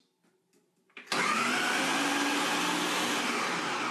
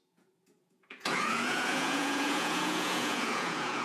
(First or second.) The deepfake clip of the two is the second